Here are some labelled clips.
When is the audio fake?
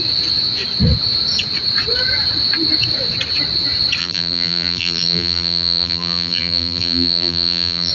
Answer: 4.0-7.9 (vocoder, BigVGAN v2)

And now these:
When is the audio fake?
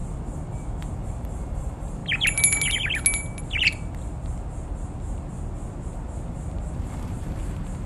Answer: 0.9-2.0 (vocoder, BigVGAN v2); 6.7-7.9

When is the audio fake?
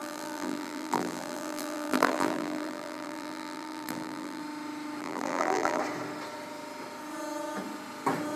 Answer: 0.0-4.4 (vocoder, BigVGAN v2); 5.0-5.8